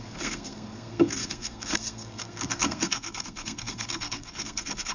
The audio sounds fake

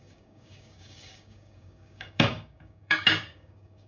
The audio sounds fake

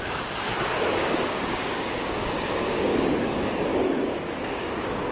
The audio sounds fake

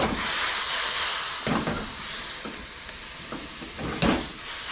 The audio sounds real